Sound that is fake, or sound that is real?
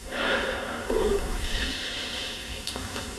fake